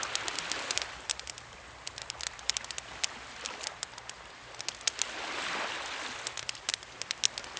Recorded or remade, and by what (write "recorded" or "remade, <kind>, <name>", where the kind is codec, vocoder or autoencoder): recorded